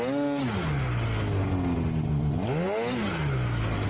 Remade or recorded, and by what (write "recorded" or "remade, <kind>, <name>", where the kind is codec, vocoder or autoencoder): recorded